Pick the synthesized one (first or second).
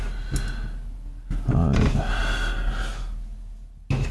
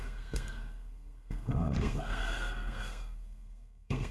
second